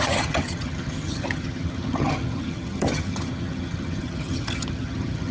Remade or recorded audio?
remade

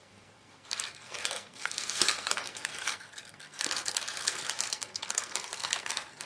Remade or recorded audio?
remade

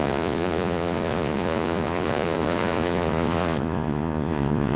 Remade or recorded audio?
remade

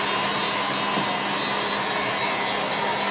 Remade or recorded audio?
recorded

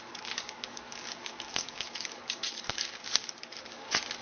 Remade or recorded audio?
remade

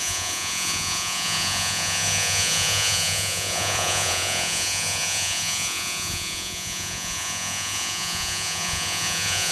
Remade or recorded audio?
remade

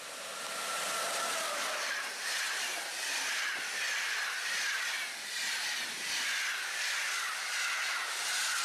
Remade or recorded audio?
recorded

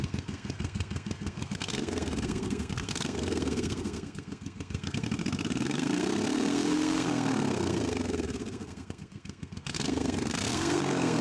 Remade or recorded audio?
remade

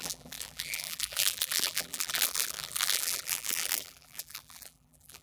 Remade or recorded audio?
remade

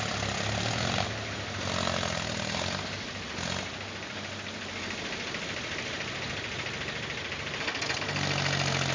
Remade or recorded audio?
recorded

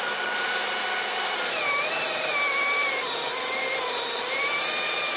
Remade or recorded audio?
recorded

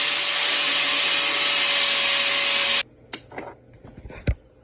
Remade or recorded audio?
recorded